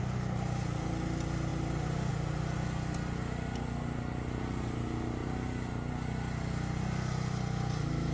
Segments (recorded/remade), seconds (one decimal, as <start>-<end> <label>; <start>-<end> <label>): 0.0-8.1 recorded